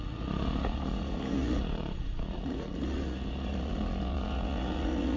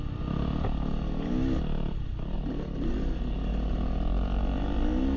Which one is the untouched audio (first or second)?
second